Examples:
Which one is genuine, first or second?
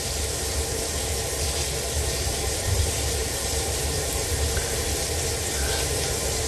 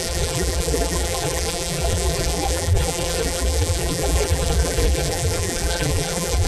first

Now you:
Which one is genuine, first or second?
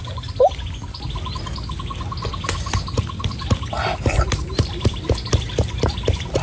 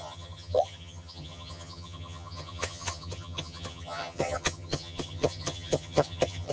first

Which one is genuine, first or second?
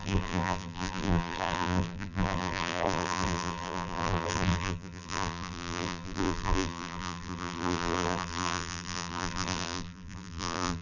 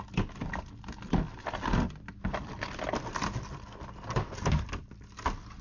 second